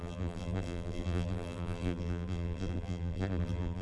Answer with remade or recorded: remade